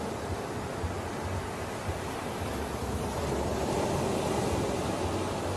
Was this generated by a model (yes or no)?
no